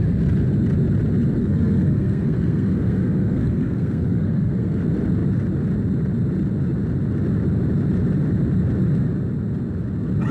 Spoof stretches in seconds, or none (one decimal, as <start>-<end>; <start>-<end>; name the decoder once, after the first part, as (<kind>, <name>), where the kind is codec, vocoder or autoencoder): 1.4-4.8 (codec, SNAC)

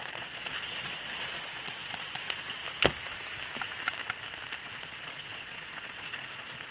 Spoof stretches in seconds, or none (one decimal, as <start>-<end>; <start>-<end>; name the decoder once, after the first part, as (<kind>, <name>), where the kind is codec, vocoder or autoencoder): 0.0-2.6 (vocoder, Vocos); 4.6-6.7

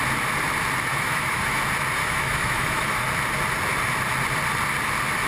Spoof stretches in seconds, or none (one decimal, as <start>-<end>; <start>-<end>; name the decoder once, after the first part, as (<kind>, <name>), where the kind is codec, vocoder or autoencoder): 0.9-1.6 (autoencoder, DAC-VAE); 2.0-3.0

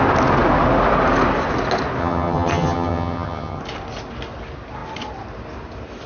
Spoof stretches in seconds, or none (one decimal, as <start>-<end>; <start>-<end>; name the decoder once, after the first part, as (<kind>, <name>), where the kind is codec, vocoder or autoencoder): 2.0-3.6 (vocoder, HiFi-GAN)

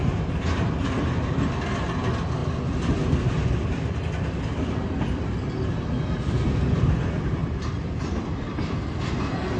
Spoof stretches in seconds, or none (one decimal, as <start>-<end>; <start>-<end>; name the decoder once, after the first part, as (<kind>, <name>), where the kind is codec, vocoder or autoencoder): 0.0-0.7 (vocoder, BigVGAN v2); 7.4-8.0

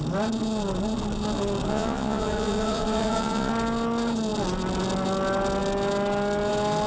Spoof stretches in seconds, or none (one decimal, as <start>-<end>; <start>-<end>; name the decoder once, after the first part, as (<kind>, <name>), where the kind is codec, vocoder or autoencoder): 1.7-3.5 (vocoder, Vocos)